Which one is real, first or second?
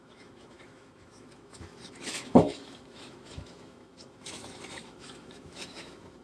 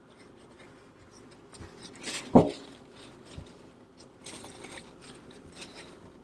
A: second